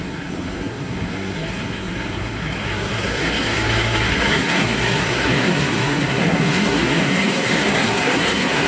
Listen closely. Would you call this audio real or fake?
fake